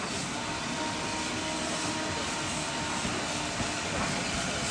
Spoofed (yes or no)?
no